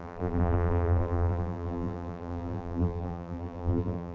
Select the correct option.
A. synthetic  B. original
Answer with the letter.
A